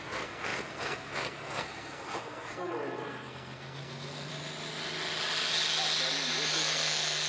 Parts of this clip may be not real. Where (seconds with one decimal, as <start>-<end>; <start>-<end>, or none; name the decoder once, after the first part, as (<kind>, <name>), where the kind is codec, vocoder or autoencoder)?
0.0-4.3 (codec, SNAC); 6.5-7.3